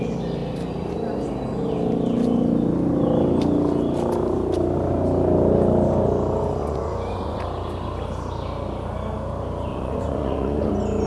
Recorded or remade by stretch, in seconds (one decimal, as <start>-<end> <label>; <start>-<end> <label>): 0.0-6.6 recorded; 6.6-7.4 remade; 7.4-9.7 recorded; 9.7-10.7 remade; 10.7-11.1 recorded